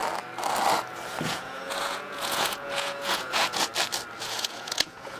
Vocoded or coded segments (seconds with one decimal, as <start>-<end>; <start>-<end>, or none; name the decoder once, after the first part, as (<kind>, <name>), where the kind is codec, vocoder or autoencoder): 1.2-3.7 (vocoder, Vocos); 4.2-5.2